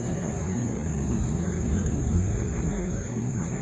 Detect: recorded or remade remade